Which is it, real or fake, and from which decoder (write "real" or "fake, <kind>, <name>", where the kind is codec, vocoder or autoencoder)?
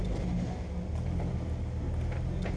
real